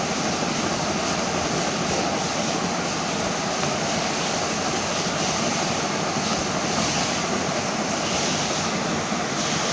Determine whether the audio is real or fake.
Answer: real